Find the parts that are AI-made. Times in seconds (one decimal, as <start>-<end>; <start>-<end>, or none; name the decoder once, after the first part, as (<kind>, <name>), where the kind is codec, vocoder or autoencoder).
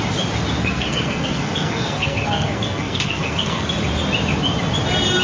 0.6-3.7 (codec, SNAC)